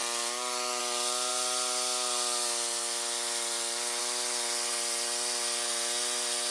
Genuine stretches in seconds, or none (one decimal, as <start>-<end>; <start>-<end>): 0.0-6.5

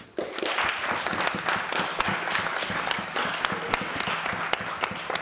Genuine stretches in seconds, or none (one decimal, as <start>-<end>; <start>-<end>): 0.0-1.9; 3.4-5.2

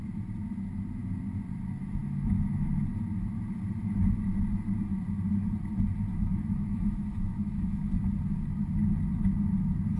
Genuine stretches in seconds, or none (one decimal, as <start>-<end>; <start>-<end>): 0.0-6.1; 7.9-10.0

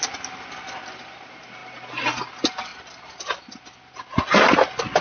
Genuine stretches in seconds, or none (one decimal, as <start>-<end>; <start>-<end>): 0.0-5.0

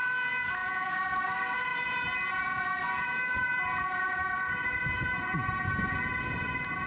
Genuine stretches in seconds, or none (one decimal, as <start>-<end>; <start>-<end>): 0.0-0.6; 1.2-6.9

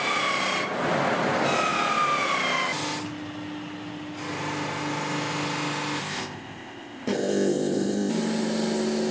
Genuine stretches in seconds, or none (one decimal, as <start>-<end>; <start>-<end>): 0.0-6.0; 8.1-9.1

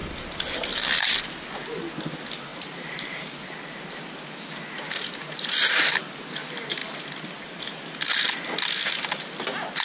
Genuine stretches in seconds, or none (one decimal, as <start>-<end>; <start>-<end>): 0.0-2.5; 3.5-9.8